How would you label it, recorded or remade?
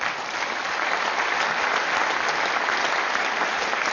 recorded